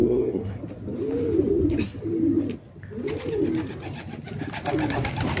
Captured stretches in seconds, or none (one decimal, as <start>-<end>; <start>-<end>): 0.6-5.4